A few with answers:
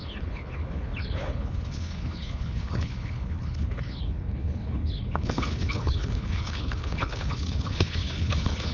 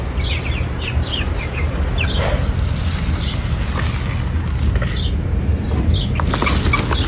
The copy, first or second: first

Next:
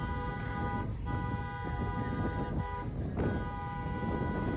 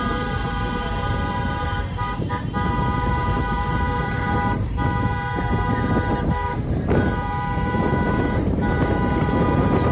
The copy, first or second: second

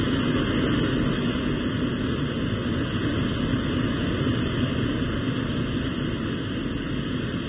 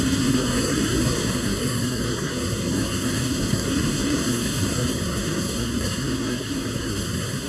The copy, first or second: second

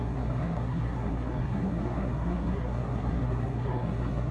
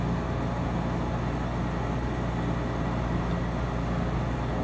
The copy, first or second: first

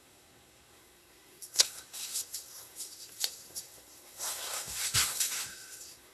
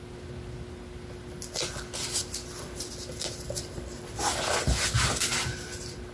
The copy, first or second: first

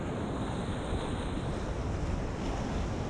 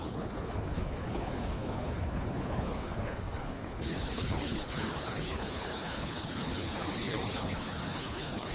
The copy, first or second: second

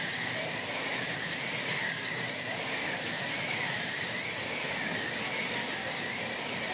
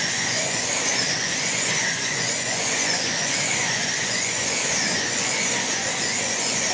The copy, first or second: second